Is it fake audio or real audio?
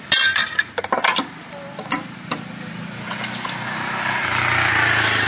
real